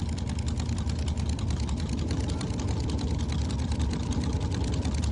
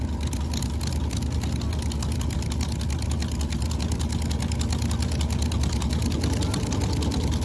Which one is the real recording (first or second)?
second